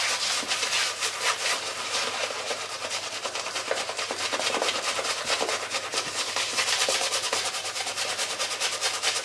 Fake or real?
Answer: fake